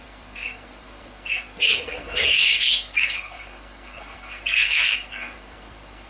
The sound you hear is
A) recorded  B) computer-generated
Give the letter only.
B